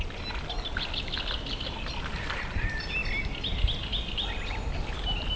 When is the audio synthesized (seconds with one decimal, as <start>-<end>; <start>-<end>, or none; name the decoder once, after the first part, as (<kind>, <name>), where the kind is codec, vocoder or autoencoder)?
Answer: none